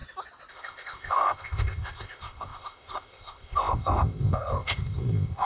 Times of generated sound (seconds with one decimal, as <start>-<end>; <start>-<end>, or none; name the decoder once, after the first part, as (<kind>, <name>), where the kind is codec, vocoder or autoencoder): 0.5-5.5 (codec, ZipCodec)